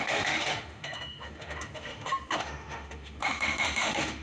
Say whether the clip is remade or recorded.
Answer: remade